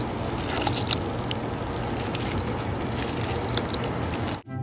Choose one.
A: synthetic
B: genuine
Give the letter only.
B